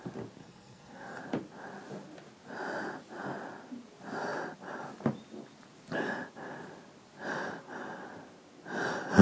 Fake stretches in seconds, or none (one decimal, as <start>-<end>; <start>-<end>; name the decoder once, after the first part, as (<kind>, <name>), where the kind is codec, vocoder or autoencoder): 0.4-1.2 (codec, SNAC)